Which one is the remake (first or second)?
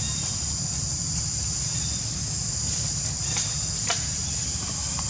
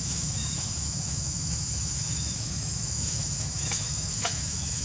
second